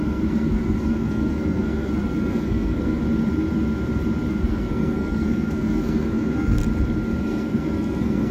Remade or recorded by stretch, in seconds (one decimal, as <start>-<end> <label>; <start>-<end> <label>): 0.0-3.0 remade; 3.0-4.3 recorded; 4.3-6.6 remade; 6.6-7.2 recorded; 7.2-8.3 remade